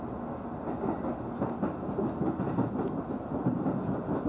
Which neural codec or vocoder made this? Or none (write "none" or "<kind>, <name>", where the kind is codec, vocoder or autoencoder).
none